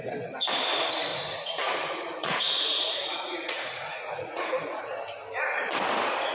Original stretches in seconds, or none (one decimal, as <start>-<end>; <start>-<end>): 0.0-1.1; 4.8-6.3